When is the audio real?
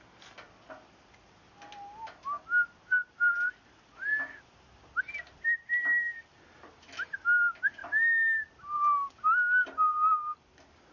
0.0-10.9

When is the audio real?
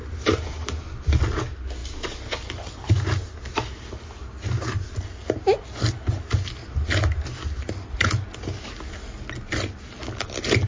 0.0-10.7